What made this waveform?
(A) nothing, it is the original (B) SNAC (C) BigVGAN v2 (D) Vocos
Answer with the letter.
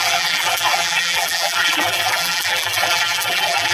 C